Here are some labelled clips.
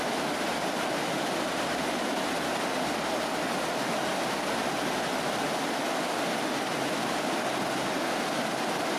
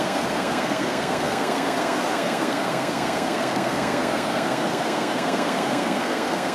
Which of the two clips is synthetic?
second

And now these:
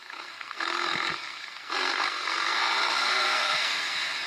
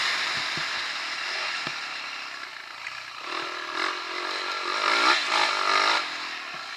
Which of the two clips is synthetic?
first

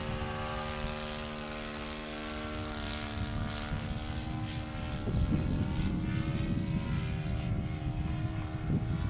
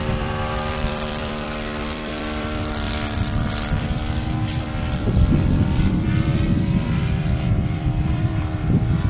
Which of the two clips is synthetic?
second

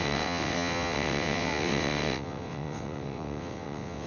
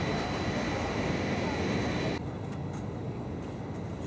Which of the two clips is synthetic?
first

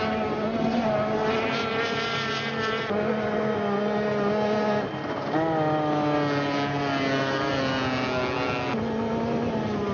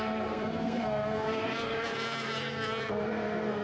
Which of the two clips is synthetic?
second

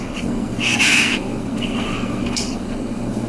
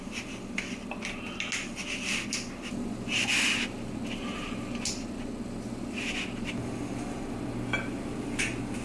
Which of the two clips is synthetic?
first